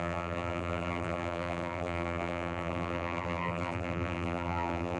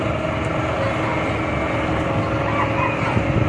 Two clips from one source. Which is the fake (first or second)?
first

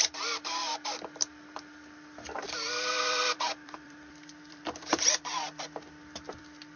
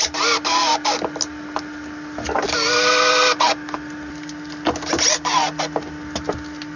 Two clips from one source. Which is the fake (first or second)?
first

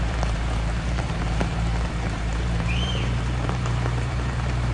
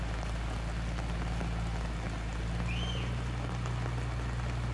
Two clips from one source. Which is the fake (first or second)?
first